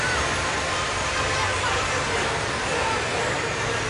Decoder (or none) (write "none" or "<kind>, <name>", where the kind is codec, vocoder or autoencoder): none